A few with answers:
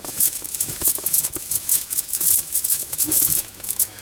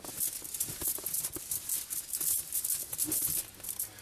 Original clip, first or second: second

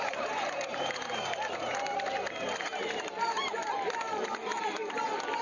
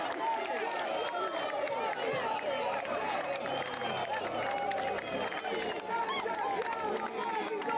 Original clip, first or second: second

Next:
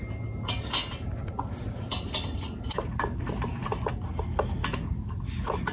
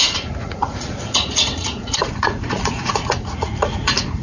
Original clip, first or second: first